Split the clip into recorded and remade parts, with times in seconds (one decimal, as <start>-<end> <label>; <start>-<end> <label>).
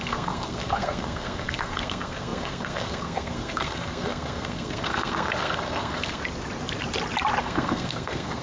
0.0-6.2 remade; 6.2-7.4 recorded; 7.4-8.4 remade